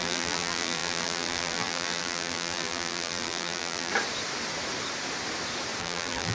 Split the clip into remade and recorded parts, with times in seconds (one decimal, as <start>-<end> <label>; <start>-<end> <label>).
0.0-3.9 remade; 3.9-5.8 recorded; 5.8-6.3 remade